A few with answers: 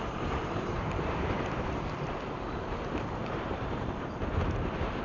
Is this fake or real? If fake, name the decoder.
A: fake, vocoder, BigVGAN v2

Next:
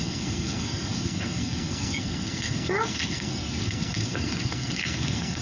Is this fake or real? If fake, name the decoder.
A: fake, codec, SNAC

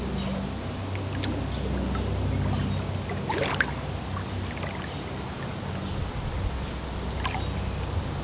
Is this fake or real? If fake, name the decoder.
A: real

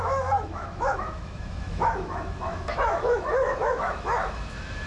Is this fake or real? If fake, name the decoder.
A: fake, autoencoder, DAC-VAE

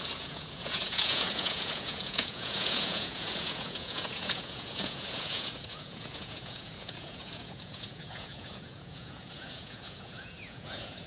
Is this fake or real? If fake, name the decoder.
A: fake, vocoder, Vocos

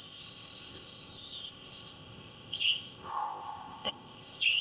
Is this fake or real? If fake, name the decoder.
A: fake, codec, ZipCodec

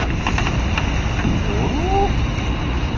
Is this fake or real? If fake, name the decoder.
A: real